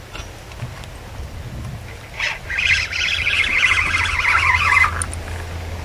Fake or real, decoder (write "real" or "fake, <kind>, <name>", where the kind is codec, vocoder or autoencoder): real